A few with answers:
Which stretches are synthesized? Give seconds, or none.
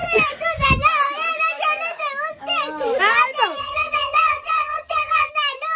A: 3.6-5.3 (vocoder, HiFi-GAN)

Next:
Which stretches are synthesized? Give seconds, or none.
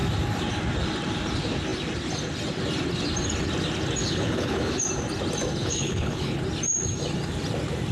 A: 4.0-4.8 (codec, HILCodec); 5.6-6.4